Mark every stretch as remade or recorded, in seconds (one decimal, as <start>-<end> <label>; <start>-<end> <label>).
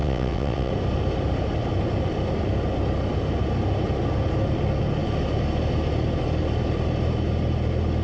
0.0-0.7 remade; 0.7-8.0 recorded